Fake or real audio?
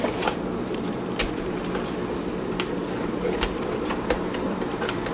fake